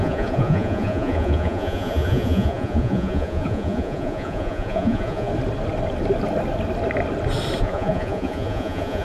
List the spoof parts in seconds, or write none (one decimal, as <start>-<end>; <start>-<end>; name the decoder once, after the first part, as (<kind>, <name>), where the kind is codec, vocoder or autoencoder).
0.0-5.3 (vocoder, Vocos); 7.6-9.0